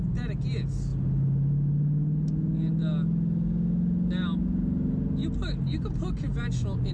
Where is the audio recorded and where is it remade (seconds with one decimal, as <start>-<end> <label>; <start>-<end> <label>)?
0.0-6.9 recorded